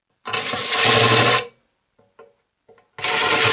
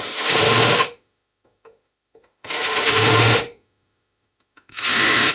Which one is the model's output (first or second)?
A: second